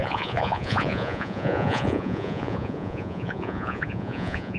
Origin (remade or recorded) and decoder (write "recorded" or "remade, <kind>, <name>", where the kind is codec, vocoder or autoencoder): remade, vocoder, Vocos